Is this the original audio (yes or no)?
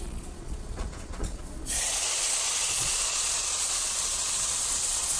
no